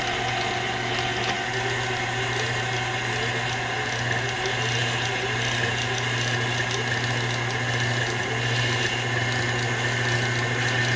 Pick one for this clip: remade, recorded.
recorded